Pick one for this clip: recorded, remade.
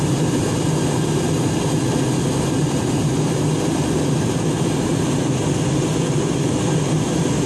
recorded